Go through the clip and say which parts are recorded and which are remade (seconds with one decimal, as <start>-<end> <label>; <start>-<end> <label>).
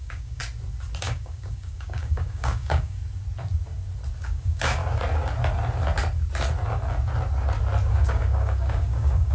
0.0-0.4 remade; 0.4-1.0 recorded; 1.0-3.0 remade; 3.0-4.2 recorded; 4.2-4.8 remade; 4.8-7.9 recorded; 7.9-9.3 remade